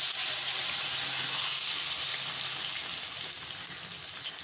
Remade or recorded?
recorded